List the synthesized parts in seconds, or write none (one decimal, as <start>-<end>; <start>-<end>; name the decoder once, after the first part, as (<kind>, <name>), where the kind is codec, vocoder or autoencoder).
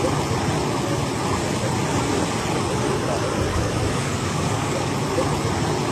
3.5-4.9 (codec, DAC)